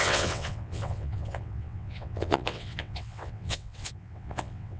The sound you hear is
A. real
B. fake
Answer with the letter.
B